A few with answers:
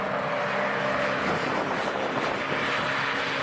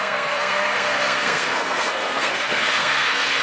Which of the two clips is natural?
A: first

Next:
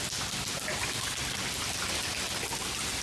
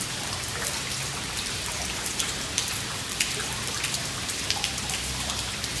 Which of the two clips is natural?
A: first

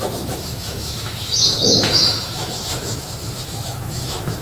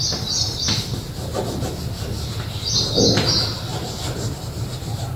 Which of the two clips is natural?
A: second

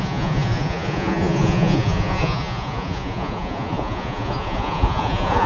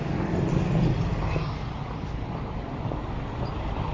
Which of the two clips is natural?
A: second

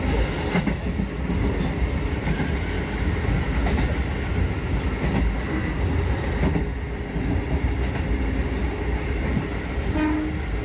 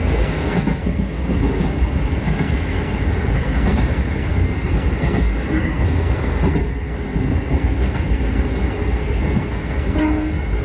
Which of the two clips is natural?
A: first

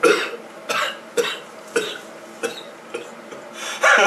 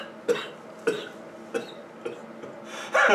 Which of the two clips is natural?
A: second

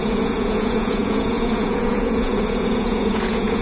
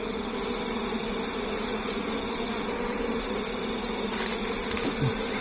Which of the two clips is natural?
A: second